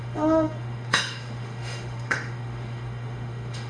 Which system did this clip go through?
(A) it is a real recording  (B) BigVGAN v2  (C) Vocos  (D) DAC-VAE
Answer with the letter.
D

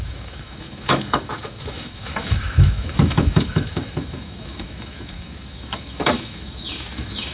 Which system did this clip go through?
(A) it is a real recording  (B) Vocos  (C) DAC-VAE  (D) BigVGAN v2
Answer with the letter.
C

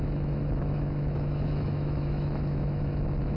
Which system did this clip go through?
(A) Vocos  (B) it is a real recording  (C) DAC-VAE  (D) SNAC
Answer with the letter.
C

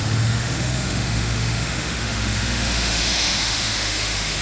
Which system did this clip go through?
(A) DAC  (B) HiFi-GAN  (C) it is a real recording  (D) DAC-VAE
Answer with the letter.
D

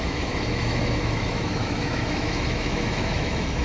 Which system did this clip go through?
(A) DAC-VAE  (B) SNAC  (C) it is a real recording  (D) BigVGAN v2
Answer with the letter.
A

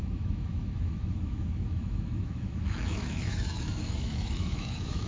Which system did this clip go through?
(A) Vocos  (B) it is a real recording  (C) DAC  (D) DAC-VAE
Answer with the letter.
D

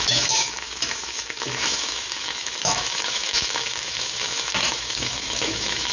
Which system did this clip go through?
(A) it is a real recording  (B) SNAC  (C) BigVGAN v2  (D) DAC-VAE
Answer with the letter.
D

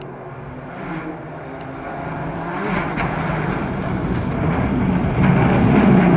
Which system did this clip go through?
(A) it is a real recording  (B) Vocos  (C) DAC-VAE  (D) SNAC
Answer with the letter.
A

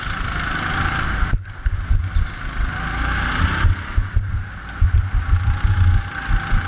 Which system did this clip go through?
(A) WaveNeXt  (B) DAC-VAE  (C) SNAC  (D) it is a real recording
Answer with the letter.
D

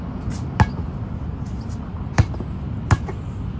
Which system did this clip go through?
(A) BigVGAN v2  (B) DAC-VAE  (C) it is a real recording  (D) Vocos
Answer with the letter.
C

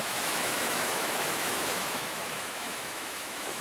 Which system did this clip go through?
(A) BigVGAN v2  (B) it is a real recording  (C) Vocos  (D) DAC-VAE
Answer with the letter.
D